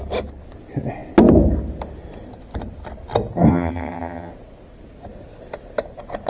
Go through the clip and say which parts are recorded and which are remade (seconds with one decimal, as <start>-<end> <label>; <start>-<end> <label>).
0.0-3.5 recorded; 3.5-4.3 remade; 4.3-6.3 recorded